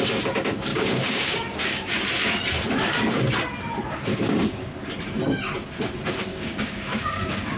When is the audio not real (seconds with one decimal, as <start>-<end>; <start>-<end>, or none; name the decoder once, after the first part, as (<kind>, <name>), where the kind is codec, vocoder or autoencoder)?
0.7-1.9 (codec, DAC); 4.1-4.7; 6.3-7.6